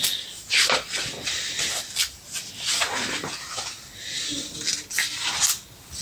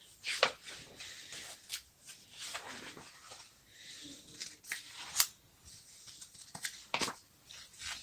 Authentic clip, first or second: second